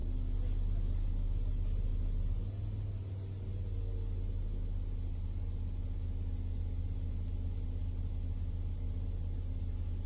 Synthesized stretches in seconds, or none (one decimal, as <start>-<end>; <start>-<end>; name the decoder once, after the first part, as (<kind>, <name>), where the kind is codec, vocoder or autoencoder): none